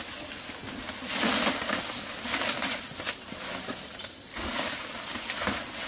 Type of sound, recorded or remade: recorded